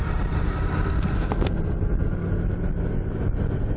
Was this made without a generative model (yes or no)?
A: yes